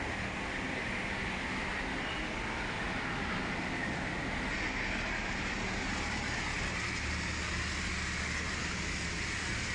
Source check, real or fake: real